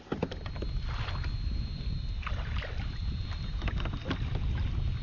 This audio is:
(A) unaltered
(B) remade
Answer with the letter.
B